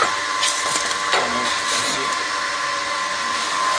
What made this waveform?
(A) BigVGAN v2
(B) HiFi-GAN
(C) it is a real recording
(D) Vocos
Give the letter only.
C